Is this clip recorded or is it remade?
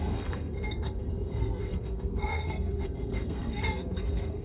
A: remade